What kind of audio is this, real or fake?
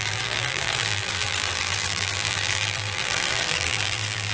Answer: fake